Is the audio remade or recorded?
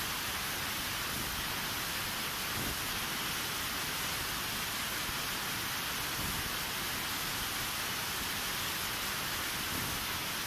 recorded